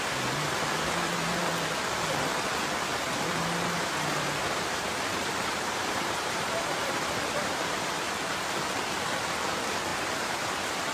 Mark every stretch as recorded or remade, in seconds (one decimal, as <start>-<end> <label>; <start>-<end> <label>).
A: 0.0-2.9 recorded; 2.9-7.6 remade; 7.6-9.9 recorded; 9.9-10.5 remade; 10.5-10.9 recorded